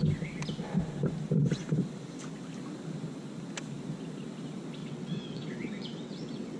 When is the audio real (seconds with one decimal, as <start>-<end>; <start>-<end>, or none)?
0.0-4.8